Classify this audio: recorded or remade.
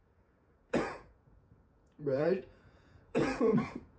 remade